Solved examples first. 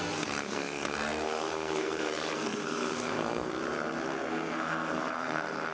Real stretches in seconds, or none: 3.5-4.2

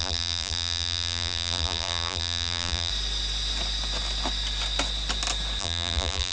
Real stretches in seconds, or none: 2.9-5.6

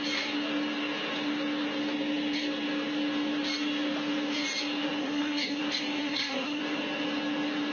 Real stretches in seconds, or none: 0.0-5.0; 5.6-6.0; 6.6-7.7